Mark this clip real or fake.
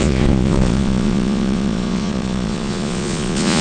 fake